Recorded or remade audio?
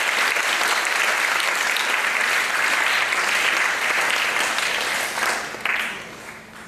recorded